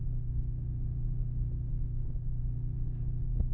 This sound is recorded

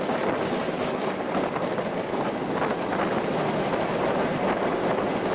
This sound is recorded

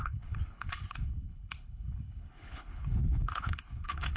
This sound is remade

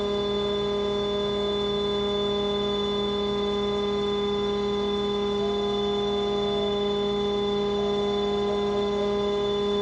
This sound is recorded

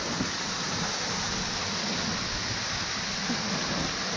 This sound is recorded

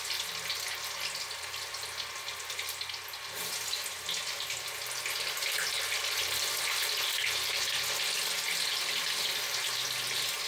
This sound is recorded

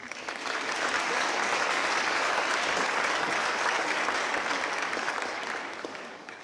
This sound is remade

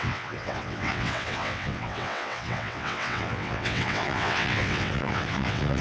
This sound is remade